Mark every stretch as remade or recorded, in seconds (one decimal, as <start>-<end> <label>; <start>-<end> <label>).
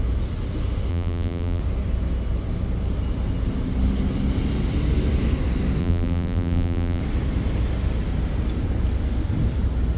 0.0-0.9 recorded; 0.9-1.6 remade; 1.6-5.8 recorded; 5.8-7.0 remade; 7.0-10.0 recorded